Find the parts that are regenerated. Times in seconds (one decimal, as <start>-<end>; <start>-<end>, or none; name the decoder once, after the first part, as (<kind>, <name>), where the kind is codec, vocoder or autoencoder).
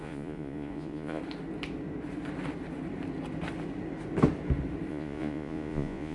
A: 0.0-1.2 (vocoder, Vocos); 4.9-6.1